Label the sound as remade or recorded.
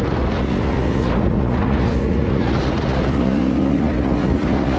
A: remade